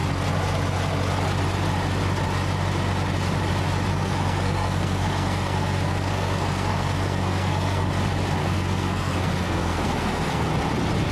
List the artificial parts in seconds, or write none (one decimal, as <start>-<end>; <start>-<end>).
3.9-7.9; 8.4-10.5